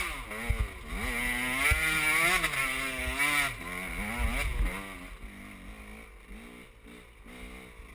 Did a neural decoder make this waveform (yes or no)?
no